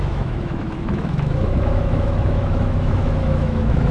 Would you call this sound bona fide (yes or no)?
no